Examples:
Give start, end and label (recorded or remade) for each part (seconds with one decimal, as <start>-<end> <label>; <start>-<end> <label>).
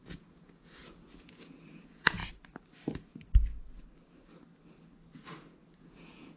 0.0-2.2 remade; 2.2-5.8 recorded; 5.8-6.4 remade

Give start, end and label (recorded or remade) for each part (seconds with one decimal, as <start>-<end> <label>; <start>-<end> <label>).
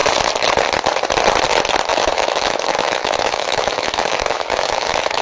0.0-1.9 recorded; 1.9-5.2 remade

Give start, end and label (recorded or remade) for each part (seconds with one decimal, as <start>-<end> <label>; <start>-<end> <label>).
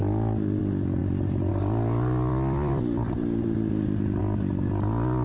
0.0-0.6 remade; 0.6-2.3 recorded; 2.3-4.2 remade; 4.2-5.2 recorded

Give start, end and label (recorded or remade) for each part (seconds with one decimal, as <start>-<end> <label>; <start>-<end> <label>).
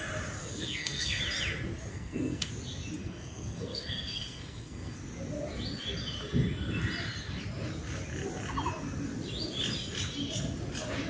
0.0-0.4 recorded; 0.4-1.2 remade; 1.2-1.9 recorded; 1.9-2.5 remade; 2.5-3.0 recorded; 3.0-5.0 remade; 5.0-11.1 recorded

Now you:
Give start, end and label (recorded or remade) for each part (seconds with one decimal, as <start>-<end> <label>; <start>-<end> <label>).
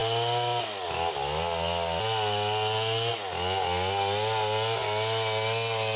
0.0-6.0 recorded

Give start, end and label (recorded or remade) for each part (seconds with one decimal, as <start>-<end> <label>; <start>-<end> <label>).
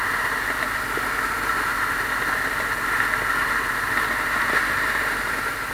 0.0-5.7 recorded